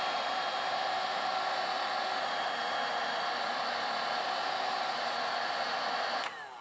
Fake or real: real